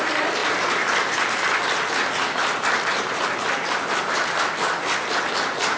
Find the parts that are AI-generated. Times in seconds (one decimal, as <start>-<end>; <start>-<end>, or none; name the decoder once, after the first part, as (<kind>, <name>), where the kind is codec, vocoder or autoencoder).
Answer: none